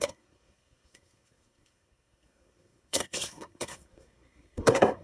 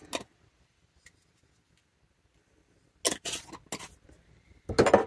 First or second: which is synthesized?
first